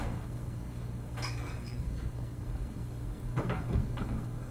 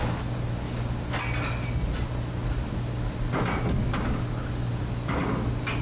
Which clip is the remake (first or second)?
first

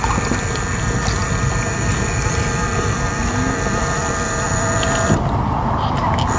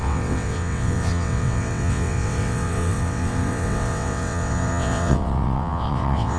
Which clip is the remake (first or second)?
second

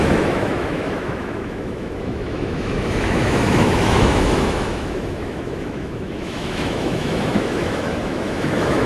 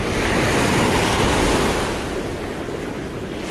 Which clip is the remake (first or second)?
first